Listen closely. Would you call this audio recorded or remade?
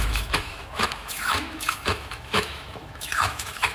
remade